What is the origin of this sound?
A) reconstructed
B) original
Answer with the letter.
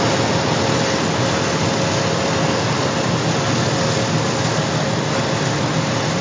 B